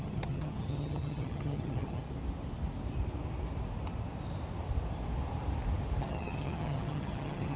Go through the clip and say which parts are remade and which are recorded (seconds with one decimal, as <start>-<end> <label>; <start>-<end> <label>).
0.0-2.0 remade; 2.0-6.0 recorded; 6.0-7.6 remade